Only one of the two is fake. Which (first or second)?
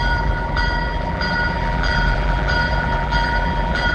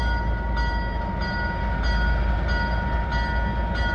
first